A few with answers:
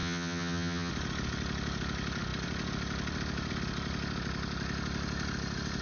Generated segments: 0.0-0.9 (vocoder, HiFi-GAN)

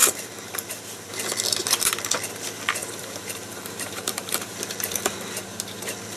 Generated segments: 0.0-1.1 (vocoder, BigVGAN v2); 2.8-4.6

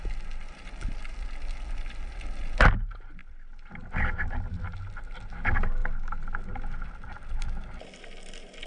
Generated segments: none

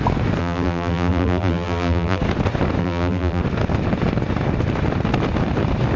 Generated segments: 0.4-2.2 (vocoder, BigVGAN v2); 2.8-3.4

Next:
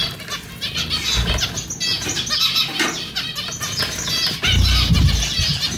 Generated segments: none

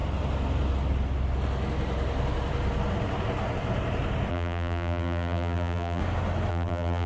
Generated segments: 4.3-6.0 (vocoder, BigVGAN v2); 6.5-7.1

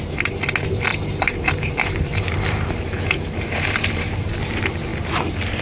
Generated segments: 0.9-4.3 (vocoder, BigVGAN v2)

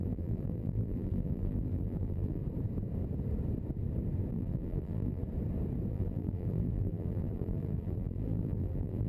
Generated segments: 0.0-2.4 (vocoder, BigVGAN v2); 4.3-5.2; 5.9-9.1